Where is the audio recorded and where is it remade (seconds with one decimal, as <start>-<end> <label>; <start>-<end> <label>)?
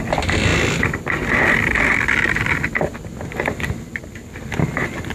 0.0-5.1 recorded